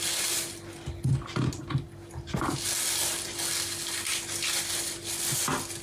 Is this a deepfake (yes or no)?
no